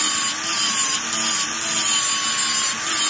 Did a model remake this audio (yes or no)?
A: no